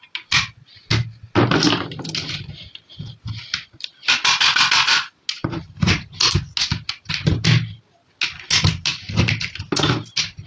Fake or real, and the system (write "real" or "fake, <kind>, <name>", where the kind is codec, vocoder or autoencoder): real